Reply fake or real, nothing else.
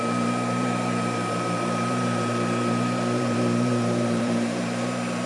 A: fake